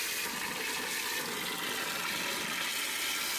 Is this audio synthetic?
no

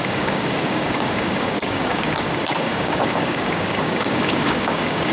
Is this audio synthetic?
yes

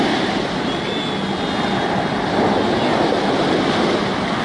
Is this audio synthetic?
no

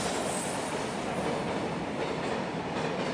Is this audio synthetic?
no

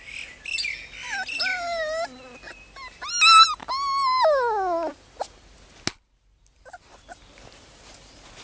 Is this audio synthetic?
no